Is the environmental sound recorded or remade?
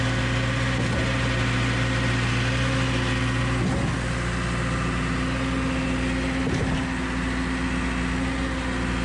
recorded